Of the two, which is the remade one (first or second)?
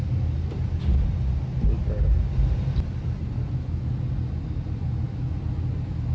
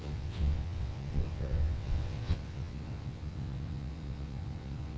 second